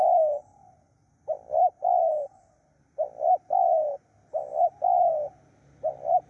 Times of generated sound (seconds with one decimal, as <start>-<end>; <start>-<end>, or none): none